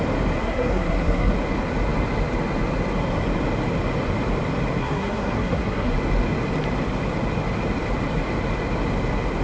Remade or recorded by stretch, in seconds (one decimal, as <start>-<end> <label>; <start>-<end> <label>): 0.0-0.4 recorded; 0.4-1.3 remade; 1.3-4.8 recorded; 4.8-5.9 remade; 5.9-9.4 recorded